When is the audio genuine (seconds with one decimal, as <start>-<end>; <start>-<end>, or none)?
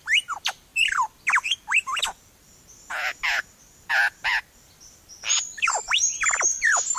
none